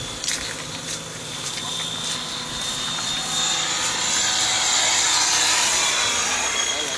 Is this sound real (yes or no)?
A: yes